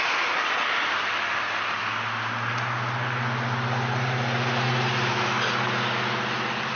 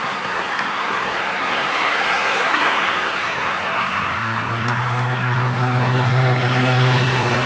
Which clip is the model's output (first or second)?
second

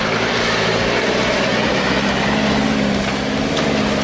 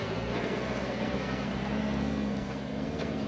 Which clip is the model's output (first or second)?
second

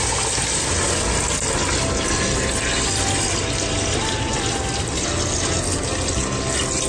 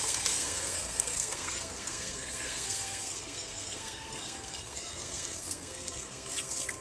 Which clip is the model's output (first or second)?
second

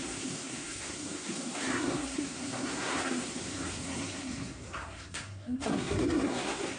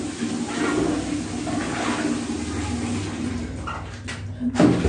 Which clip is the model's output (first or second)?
first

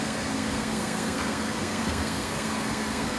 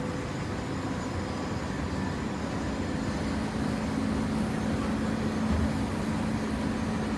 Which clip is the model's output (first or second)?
first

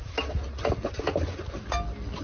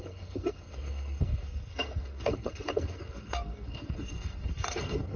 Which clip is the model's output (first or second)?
second